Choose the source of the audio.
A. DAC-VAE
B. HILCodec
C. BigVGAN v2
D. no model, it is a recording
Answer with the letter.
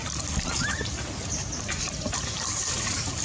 D